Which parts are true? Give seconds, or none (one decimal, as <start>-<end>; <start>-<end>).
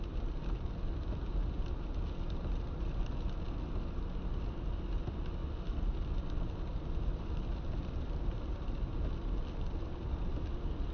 0.0-10.9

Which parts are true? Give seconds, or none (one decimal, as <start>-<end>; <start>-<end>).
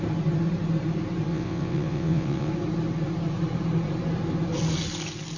0.0-1.3; 2.5-5.4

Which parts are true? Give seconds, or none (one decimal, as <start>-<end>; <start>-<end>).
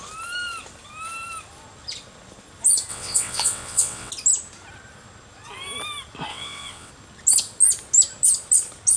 0.0-2.9; 4.1-6.3; 6.9-9.0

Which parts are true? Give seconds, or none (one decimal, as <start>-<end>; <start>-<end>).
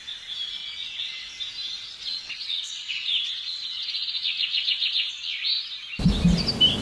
0.0-0.6; 1.3-2.0; 5.1-6.8